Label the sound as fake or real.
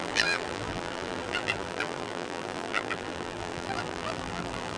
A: fake